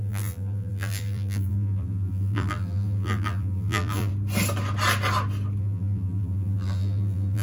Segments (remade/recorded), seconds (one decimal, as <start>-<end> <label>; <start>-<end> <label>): 0.0-4.1 remade; 4.1-5.6 recorded; 5.6-7.4 remade